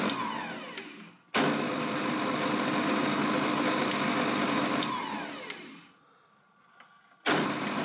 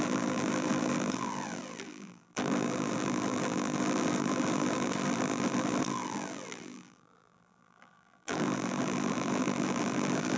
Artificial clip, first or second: second